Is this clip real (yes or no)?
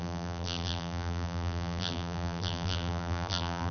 no